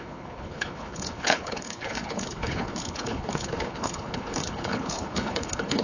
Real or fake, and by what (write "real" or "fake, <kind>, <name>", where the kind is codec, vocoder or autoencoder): fake, codec, HILCodec